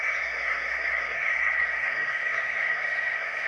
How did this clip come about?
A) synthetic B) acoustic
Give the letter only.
A